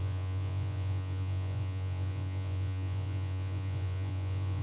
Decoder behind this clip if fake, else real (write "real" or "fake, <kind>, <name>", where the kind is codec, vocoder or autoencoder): fake, vocoder, Vocos